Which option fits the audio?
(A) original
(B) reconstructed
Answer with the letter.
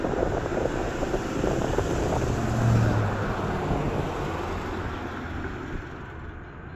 A